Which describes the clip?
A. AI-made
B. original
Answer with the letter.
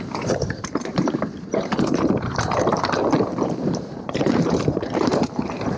A